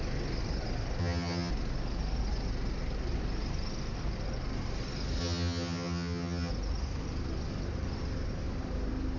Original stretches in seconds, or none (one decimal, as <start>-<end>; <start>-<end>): 0.0-1.0; 1.5-5.2; 6.5-9.2